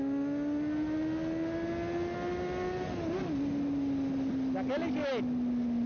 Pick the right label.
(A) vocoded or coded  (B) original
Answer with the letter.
B